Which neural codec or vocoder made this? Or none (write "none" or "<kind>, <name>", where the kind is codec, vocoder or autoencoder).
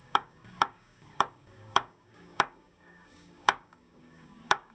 codec, DAC